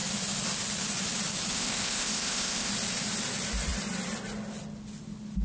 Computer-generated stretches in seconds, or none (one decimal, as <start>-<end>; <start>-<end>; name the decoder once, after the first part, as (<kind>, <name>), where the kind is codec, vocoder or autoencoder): 1.5-2.7 (codec, ZipCodec)